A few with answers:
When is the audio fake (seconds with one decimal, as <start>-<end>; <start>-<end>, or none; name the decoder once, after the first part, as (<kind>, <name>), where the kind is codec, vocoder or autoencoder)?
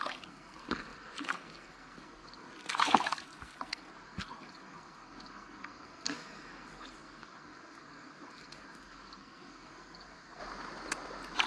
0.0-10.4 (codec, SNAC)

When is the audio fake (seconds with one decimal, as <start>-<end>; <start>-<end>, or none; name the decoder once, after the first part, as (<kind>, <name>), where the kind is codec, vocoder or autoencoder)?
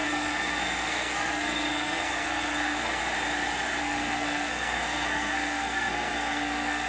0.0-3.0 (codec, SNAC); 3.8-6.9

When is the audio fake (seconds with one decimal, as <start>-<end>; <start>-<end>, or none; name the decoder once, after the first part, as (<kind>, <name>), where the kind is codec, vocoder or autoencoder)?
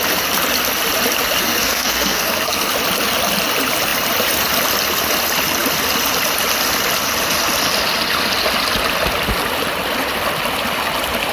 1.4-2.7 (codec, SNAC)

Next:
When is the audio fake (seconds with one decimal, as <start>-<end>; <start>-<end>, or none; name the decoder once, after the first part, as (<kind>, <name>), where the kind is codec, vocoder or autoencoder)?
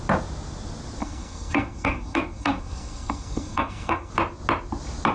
1.0-4.1 (codec, SNAC)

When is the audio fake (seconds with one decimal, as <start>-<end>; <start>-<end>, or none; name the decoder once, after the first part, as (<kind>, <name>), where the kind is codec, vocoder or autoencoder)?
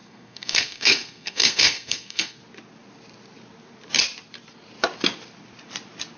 0.0-2.4 (codec, SNAC)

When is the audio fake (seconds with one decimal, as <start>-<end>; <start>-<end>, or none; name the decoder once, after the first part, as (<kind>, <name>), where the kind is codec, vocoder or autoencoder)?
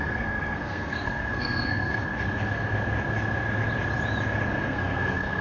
0.0-2.0 (codec, SNAC); 4.5-5.4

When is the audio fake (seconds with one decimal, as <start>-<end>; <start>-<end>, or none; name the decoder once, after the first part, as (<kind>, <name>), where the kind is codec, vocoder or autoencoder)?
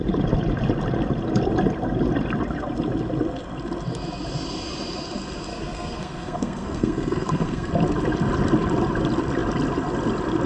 5.5-7.7 (codec, SNAC)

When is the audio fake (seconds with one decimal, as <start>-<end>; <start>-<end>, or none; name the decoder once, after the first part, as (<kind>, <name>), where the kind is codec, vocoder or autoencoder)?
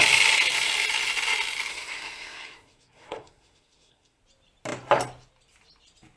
1.7-4.2 (codec, SNAC)